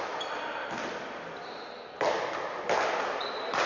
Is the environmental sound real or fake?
real